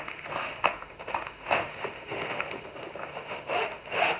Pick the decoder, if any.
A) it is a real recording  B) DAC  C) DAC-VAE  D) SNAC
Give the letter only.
C